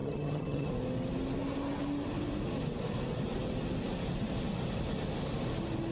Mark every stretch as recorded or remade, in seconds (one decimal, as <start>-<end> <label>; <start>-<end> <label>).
0.0-0.7 remade; 0.7-5.9 recorded